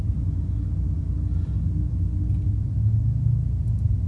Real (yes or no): yes